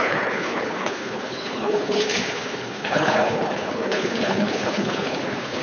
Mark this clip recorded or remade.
remade